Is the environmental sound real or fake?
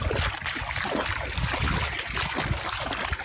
real